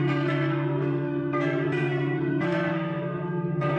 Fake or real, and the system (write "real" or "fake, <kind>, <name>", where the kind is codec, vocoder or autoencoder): fake, codec, SNAC